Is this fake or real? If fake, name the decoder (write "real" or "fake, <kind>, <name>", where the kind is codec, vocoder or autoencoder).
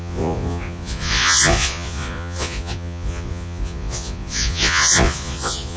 fake, vocoder, Vocos